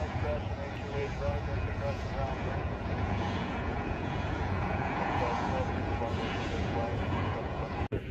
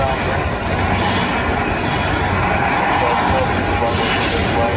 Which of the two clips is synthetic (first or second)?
first